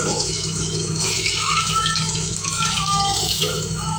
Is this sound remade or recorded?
remade